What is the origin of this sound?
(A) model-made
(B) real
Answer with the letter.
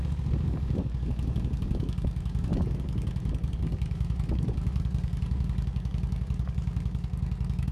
A